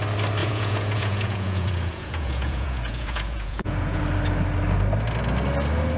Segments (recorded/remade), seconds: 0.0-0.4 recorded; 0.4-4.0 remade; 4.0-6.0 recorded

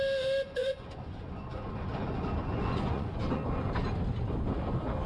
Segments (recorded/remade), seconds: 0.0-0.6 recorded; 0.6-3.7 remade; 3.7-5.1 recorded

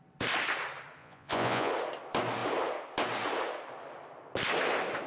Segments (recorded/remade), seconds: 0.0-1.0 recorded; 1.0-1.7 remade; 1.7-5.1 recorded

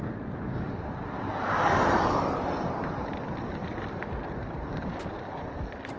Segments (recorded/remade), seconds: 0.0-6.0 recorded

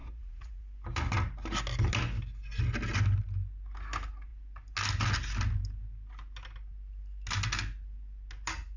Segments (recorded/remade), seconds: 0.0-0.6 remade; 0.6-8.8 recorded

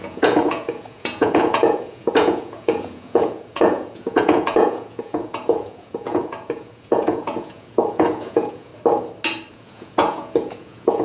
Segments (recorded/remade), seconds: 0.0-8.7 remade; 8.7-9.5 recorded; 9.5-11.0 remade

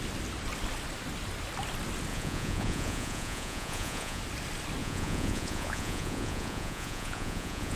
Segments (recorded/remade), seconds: 0.0-2.1 recorded; 2.1-4.2 remade; 4.2-4.8 recorded; 4.8-7.8 remade

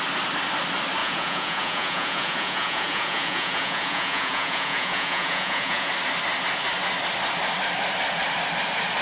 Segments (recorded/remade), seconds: 0.0-1.0 recorded; 1.0-5.9 remade; 5.9-9.0 recorded